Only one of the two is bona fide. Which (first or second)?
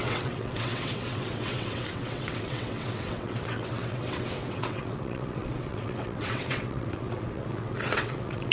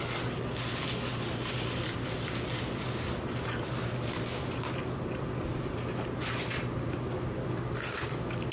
second